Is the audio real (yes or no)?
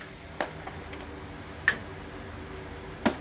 yes